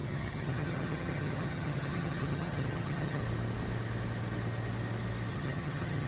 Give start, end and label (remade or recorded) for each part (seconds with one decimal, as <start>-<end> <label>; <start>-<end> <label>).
0.0-3.2 remade; 3.2-5.3 recorded; 5.3-6.1 remade